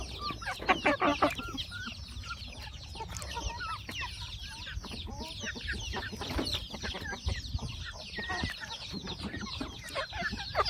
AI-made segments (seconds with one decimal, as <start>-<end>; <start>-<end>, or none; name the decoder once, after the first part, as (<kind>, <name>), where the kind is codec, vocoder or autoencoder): 4.4-7.8 (vocoder, BigVGAN v2)